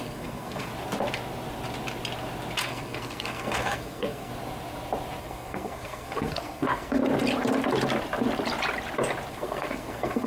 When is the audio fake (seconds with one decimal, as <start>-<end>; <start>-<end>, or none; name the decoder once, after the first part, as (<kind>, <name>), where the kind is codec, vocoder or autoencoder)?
0.0-0.7 (codec, SNAC); 2.6-4.3; 5.2-7.0; 9.3-10.3